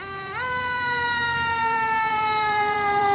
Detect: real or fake fake